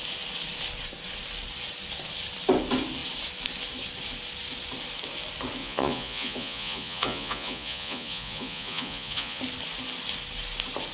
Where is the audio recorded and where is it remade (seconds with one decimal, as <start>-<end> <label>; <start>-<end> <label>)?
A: 0.0-5.6 recorded; 5.6-9.4 remade; 9.4-10.9 recorded